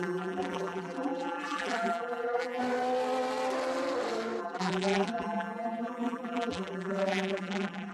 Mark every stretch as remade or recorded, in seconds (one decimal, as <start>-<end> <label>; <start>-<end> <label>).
0.0-2.6 remade; 2.6-4.4 recorded; 4.4-7.9 remade